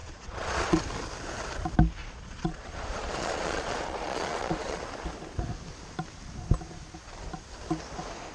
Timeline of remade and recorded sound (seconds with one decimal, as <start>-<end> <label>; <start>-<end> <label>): 0.0-0.8 remade; 0.8-2.0 recorded; 2.0-4.8 remade; 4.8-8.3 recorded